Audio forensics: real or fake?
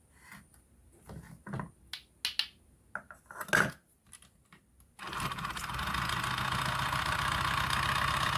real